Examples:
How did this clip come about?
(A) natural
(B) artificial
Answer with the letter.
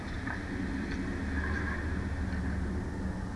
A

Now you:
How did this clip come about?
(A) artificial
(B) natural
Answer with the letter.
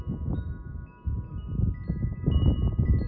B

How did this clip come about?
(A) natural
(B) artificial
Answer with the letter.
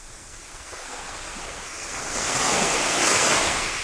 B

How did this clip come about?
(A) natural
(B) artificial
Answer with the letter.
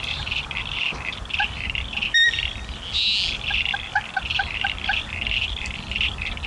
A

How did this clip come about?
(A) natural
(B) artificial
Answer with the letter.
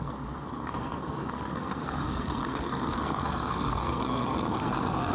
B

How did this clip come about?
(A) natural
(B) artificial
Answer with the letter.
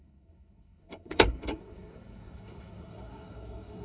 B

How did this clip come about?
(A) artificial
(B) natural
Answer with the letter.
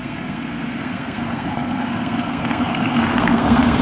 A